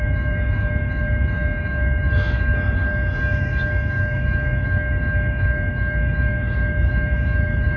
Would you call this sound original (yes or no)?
no